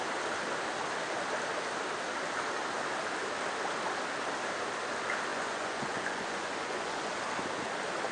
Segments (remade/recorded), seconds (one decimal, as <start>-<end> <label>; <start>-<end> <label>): 0.0-5.3 recorded; 5.3-7.1 remade; 7.1-8.1 recorded